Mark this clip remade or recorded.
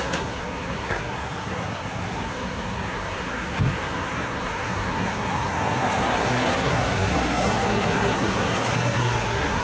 remade